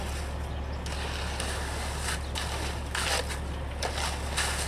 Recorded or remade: recorded